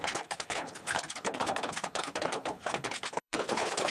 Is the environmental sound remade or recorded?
remade